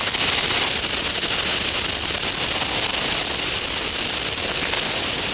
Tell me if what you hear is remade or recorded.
recorded